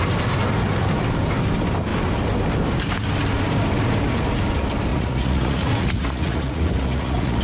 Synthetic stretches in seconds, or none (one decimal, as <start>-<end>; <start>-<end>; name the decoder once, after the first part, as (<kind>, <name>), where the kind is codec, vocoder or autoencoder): 4.9-7.4 (vocoder, Vocos)